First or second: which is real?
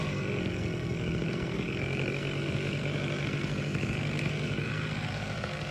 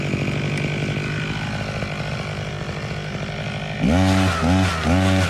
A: second